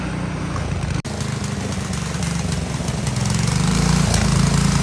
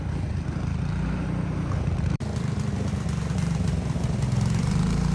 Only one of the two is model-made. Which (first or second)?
second